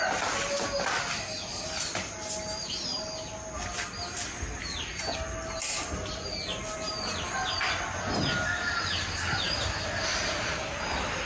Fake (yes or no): no